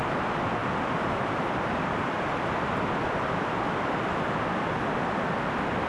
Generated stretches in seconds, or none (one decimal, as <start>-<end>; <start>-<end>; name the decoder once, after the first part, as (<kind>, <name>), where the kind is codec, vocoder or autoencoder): 0.6-4.1 (vocoder, BigVGAN v2)